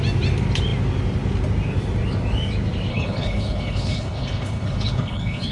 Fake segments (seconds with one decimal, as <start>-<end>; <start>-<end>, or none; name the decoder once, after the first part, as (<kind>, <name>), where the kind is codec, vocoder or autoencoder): 2.9-5.5 (codec, HILCodec)